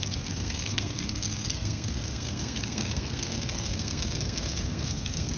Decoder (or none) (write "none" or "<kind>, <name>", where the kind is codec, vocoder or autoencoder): codec, SNAC